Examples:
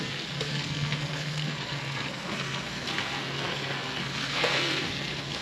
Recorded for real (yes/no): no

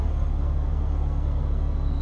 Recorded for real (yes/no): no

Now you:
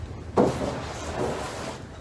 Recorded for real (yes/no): yes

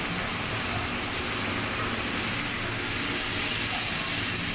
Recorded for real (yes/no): yes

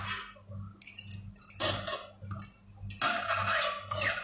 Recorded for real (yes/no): yes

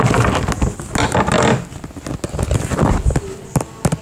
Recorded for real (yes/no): yes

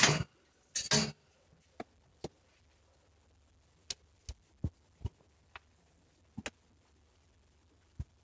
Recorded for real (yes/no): yes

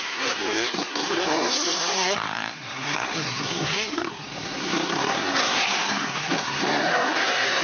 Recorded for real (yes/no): no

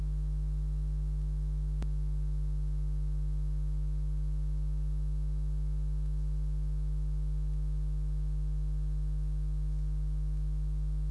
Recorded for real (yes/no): yes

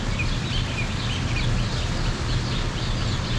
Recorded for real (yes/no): yes